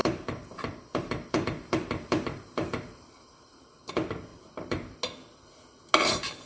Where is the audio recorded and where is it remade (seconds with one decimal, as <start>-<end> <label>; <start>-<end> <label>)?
0.0-3.9 remade; 3.9-4.3 recorded; 4.3-5.0 remade; 5.0-6.5 recorded